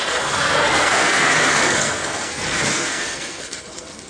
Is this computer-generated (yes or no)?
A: yes